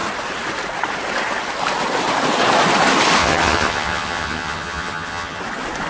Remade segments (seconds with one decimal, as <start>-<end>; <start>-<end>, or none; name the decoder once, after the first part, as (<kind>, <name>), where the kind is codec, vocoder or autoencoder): 3.2-5.4 (vocoder, HiFi-GAN)